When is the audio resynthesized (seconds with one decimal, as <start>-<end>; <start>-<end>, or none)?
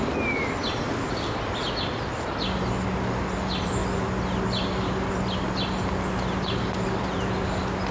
none